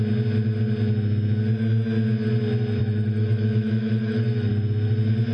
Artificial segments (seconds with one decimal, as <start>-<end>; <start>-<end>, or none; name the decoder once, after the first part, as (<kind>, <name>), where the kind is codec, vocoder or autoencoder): 2.8-4.5 (autoencoder, DAC-VAE)